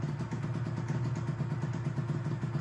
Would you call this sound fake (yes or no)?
no